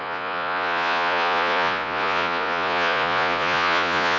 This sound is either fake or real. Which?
fake